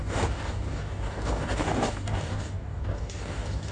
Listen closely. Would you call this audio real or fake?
fake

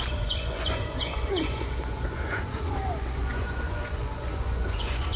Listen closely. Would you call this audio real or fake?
fake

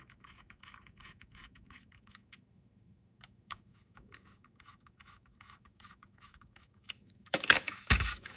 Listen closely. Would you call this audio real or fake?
fake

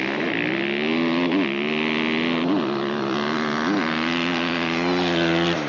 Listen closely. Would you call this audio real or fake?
real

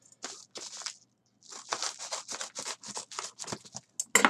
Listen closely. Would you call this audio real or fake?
real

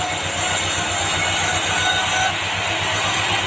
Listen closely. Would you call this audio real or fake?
real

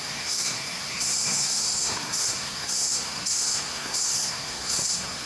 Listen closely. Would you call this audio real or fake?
fake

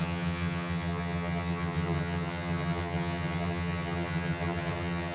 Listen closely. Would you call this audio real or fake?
fake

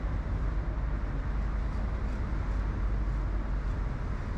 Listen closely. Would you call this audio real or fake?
real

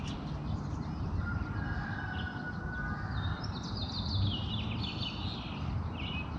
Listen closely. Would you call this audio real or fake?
real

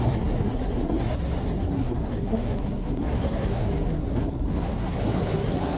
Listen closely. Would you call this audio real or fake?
fake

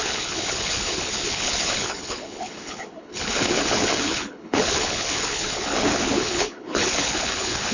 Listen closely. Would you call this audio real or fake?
fake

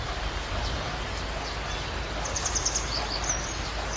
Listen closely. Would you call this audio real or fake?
real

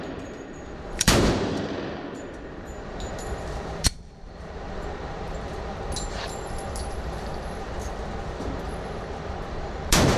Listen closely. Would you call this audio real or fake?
fake